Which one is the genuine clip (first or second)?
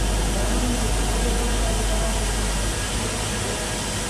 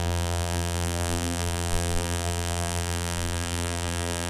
first